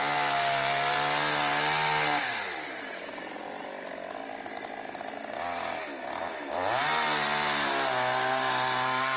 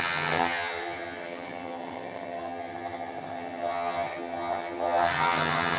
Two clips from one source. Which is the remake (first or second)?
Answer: second